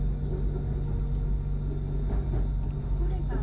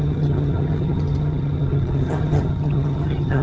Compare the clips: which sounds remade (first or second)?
second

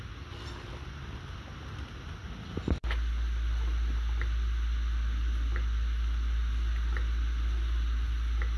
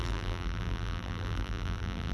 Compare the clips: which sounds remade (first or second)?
second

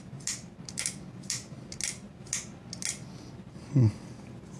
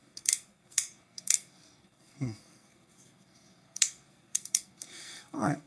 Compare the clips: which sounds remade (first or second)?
second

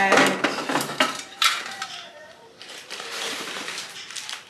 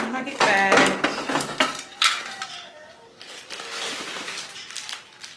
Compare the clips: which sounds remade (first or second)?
first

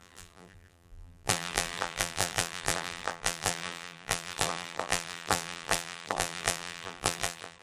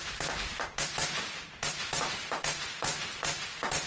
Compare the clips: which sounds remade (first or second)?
first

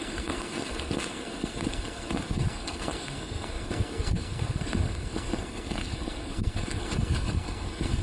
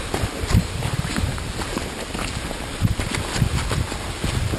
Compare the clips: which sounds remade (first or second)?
first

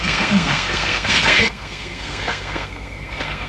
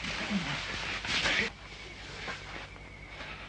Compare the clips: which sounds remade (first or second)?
first